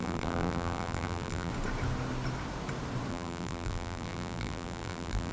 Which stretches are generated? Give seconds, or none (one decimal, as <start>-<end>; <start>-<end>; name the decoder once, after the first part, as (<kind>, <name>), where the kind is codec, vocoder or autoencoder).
0.0-1.5 (vocoder, BigVGAN v2); 3.1-5.3